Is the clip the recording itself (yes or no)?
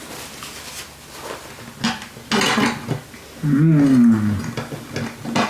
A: yes